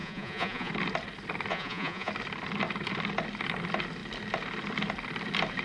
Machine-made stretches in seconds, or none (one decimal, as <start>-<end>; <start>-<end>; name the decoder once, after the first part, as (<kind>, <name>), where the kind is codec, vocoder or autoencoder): 0.0-0.7 (vocoder, Vocos); 1.5-2.1